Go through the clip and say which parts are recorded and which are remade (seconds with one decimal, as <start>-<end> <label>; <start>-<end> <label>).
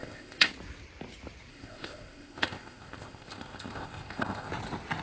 0.0-0.5 remade; 0.5-1.5 recorded; 1.5-4.5 remade; 4.5-5.0 recorded